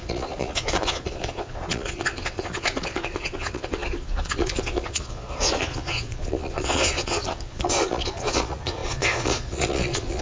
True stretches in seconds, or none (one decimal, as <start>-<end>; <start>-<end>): none